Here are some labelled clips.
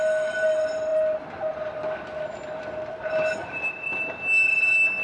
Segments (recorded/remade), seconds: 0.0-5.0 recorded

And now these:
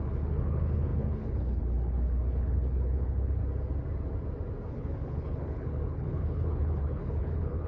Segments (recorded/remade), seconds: 0.0-3.4 remade; 3.4-4.7 recorded; 4.7-7.7 remade

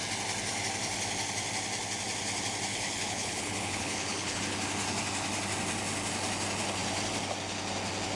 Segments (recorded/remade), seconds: 0.0-2.7 recorded; 2.7-4.4 remade; 4.4-8.2 recorded

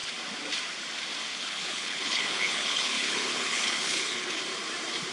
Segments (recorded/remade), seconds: 0.0-1.3 recorded; 1.3-4.4 remade; 4.4-5.1 recorded